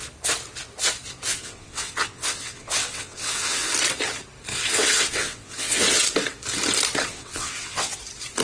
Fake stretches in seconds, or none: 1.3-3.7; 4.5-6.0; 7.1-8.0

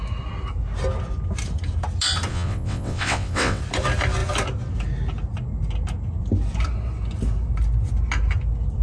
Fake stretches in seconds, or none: 2.3-3.6

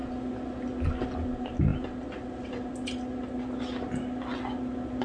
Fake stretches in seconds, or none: none

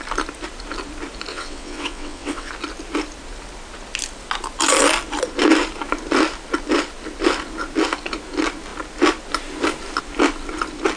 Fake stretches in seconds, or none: 1.3-2.5

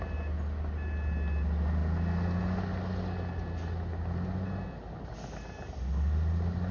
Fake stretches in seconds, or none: none

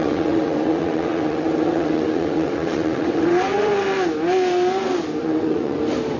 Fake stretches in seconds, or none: 0.0-3.7; 5.2-5.8

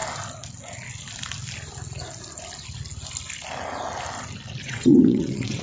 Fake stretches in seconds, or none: 4.6-5.6

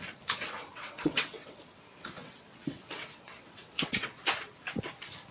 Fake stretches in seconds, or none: 0.7-1.6; 2.2-4.2